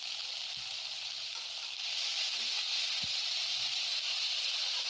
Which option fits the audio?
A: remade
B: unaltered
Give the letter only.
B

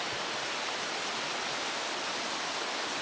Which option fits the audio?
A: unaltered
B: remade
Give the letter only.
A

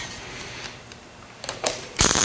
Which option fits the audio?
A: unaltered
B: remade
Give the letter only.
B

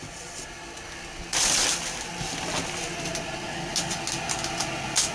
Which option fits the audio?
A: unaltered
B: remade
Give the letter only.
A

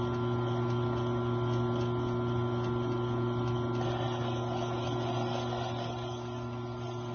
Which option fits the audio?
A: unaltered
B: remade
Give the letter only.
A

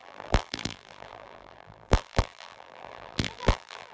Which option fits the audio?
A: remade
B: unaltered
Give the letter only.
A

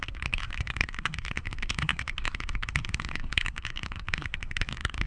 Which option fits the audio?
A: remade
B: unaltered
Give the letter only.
A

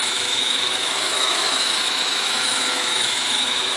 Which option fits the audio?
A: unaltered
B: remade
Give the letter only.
B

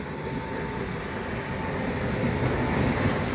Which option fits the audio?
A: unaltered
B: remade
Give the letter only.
A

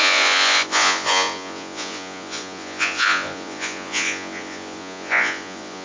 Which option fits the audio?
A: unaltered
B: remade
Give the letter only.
B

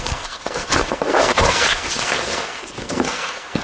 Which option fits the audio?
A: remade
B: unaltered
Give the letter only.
A